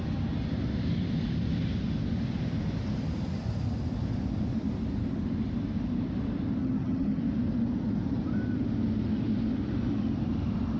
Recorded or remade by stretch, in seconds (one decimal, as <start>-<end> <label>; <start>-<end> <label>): 0.0-6.6 recorded; 6.6-7.2 remade; 7.2-10.8 recorded